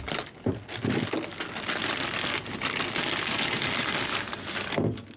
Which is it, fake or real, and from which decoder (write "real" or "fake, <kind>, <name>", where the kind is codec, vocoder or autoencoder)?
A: real